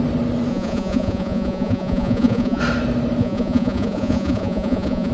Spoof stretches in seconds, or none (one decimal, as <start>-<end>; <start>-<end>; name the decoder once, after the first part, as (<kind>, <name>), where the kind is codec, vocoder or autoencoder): 0.5-2.6 (vocoder, Vocos); 3.2-5.1